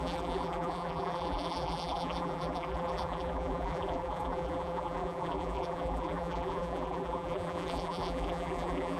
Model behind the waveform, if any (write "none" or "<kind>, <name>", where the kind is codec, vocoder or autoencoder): vocoder, BigVGAN v2